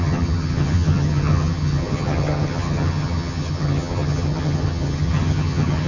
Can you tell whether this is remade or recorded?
remade